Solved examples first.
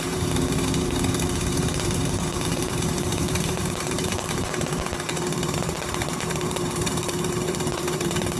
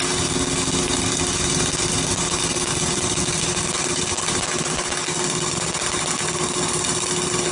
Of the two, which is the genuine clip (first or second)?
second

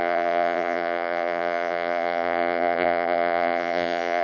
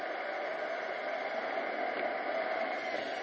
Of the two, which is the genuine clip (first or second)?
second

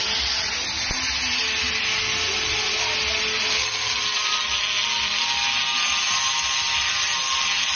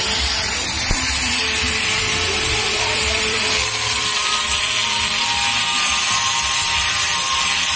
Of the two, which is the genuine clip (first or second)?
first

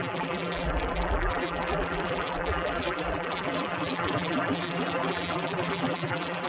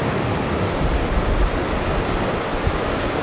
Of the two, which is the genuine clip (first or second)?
second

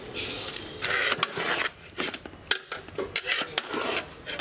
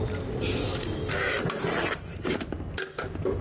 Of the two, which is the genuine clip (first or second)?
second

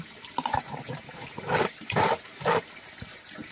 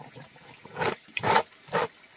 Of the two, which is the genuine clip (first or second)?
second